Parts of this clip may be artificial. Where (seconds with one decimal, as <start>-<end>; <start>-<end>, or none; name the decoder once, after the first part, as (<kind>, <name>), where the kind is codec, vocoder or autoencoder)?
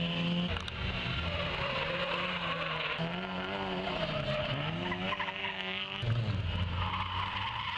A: 5.4-6.4 (codec, DAC)